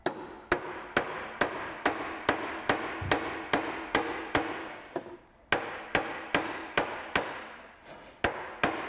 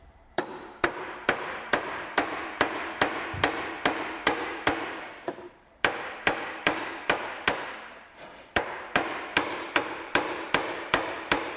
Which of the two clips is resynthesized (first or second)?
second